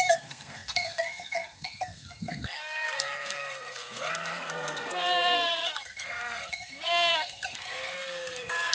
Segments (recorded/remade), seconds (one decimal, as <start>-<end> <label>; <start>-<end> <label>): 0.0-8.7 remade